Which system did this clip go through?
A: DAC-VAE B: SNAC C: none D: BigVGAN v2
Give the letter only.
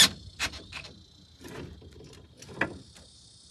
C